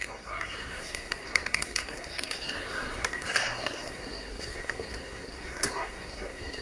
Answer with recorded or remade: remade